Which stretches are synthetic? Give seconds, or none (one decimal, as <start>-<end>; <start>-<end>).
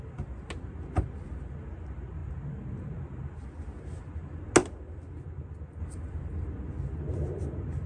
none